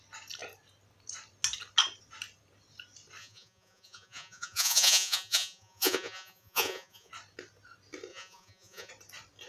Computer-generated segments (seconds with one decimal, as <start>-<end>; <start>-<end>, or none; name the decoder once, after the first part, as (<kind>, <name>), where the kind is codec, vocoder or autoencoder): 3.2-7.1 (vocoder, Vocos); 8.1-8.9